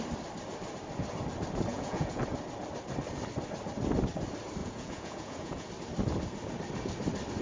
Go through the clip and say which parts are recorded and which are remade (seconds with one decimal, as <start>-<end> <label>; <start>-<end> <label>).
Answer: 0.0-1.7 recorded; 1.7-2.2 remade; 2.2-4.6 recorded; 4.6-5.7 remade; 5.7-7.4 recorded